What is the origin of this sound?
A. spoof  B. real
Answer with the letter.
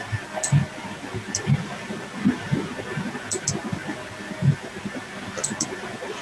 A